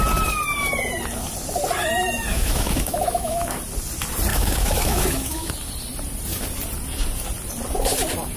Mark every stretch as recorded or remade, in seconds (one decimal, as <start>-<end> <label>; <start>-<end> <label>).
0.0-2.3 recorded; 2.3-3.6 remade; 3.6-4.3 recorded; 4.3-5.5 remade; 5.5-8.4 recorded